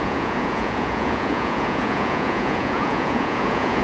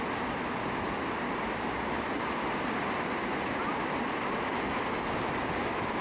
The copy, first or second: first